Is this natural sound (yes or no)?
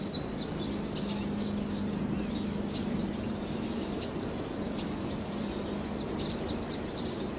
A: yes